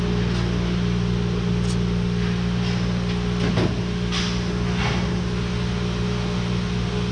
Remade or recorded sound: recorded